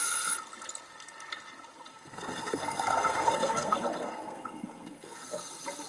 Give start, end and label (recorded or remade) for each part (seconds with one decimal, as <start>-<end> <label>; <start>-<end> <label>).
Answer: 0.0-1.9 recorded; 1.9-5.4 remade; 5.4-5.9 recorded